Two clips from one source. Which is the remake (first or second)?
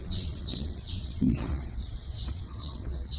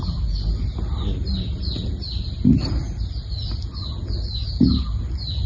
first